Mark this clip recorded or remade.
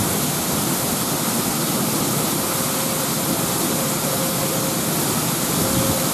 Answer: recorded